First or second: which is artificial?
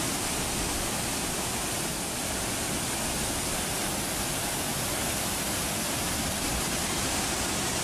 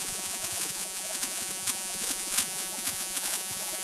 second